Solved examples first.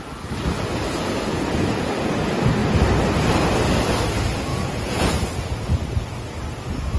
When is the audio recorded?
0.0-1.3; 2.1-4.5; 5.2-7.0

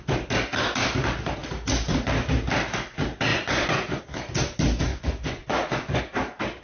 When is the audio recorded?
0.0-3.3; 4.0-4.9; 6.0-6.6